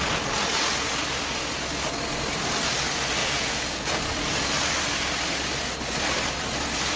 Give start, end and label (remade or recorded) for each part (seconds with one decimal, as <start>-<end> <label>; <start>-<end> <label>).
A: 0.0-3.2 recorded; 3.2-4.0 remade; 4.0-7.0 recorded